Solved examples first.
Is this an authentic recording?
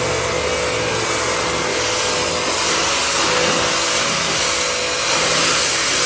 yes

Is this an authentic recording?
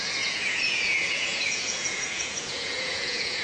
no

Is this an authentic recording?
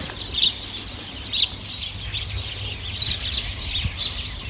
yes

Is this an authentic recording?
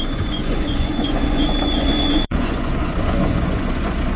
no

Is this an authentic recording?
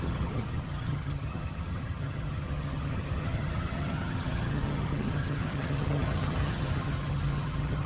no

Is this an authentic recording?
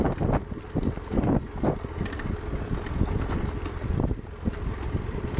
yes